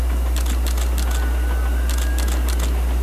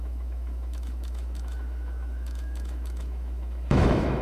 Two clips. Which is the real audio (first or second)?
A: first